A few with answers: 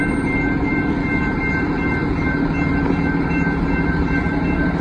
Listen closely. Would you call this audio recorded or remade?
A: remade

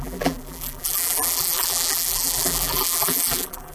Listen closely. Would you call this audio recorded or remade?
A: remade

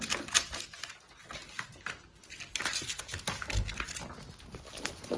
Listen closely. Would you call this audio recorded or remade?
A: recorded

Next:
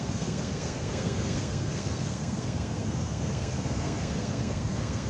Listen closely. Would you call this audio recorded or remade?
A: remade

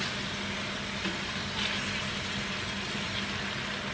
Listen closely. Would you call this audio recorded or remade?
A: recorded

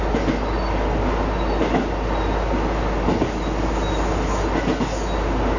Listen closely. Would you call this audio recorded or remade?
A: recorded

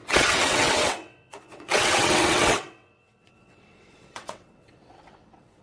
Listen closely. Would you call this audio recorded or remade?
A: remade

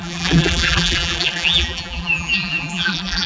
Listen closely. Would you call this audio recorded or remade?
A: remade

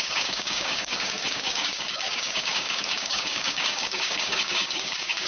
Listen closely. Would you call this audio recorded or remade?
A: remade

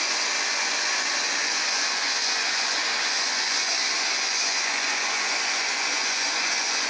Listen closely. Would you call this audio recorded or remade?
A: remade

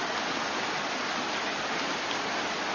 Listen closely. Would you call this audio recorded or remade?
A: recorded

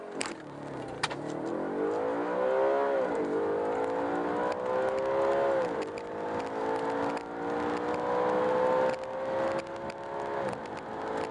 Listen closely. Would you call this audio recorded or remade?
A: recorded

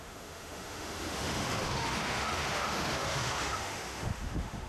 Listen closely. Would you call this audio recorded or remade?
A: remade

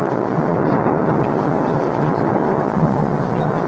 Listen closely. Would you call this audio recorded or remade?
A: remade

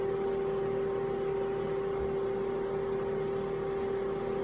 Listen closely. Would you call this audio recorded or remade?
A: recorded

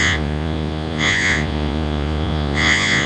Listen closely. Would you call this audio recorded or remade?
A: remade